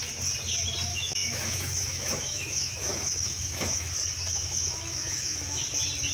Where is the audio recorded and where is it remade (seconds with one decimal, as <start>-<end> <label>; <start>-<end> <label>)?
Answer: 0.0-0.9 recorded; 0.9-3.9 remade; 3.9-4.3 recorded; 4.3-5.6 remade; 5.6-6.1 recorded